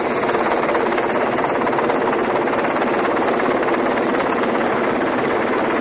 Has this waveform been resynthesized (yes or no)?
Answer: no